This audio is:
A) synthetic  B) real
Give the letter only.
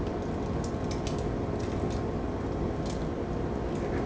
B